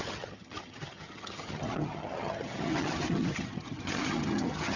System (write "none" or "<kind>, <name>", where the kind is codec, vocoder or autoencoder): vocoder, HiFi-GAN